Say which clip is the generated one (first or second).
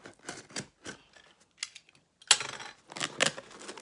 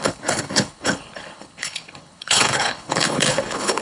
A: second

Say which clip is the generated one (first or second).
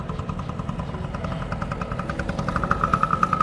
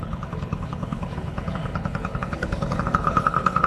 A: second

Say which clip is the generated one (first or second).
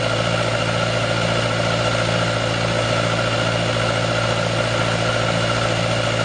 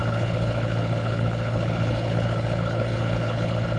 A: second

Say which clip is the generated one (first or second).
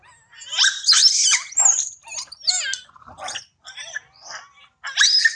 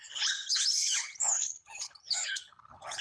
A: second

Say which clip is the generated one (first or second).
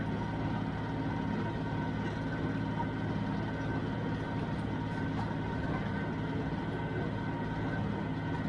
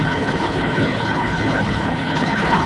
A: second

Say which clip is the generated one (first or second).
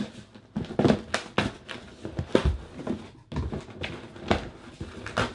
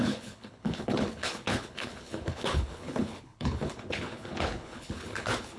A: second